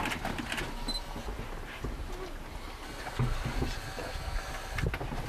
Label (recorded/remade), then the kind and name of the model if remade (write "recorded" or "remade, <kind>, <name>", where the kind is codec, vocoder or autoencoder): recorded